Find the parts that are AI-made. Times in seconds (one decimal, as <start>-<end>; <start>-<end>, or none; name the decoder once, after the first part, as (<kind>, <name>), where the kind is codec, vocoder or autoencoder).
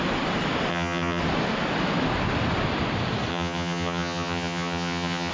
0.7-1.2 (vocoder, HiFi-GAN); 3.3-5.3